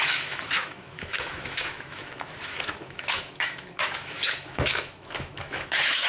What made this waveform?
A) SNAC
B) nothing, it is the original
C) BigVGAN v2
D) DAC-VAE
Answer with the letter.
D